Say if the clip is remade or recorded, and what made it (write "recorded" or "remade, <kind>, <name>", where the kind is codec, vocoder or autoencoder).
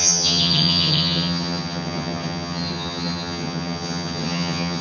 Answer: remade, vocoder, HiFi-GAN